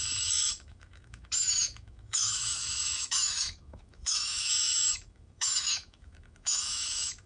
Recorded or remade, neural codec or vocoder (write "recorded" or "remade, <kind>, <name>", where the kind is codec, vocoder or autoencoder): remade, autoencoder, DAC-VAE